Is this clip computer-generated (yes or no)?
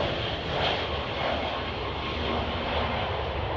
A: no